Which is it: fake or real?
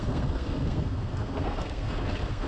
fake